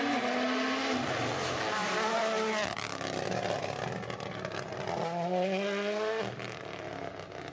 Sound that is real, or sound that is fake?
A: real